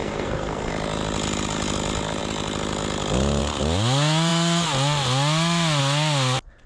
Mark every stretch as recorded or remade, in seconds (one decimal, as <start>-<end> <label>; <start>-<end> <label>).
0.0-0.7 remade; 0.7-6.7 recorded